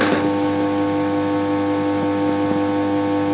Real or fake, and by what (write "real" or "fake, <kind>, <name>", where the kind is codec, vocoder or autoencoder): real